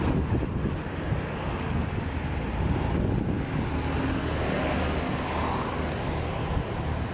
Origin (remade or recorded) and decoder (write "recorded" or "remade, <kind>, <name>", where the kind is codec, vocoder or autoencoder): recorded